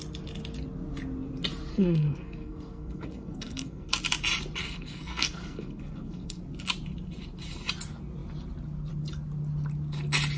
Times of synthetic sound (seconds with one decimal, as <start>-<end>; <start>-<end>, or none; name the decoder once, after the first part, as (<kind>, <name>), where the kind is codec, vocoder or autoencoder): 1.7-3.9 (codec, SNAC); 4.6-6.4